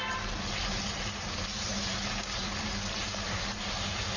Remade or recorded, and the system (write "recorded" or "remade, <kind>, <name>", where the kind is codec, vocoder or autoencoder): remade, vocoder, BigVGAN v2